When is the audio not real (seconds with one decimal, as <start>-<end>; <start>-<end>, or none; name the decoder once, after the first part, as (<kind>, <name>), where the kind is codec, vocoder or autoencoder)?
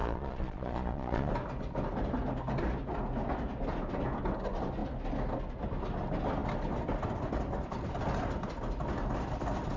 0.0-1.3 (vocoder, Vocos)